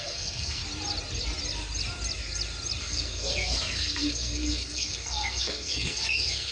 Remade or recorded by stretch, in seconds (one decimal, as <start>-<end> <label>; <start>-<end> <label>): 0.0-0.6 remade; 0.6-2.8 recorded; 2.8-6.5 remade